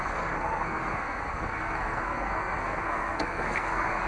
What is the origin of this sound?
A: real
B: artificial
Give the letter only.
B